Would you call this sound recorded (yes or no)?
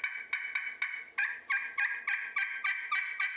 yes